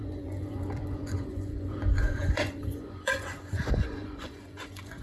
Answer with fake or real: fake